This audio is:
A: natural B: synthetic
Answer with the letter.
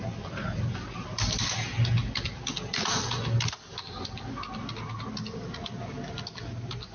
A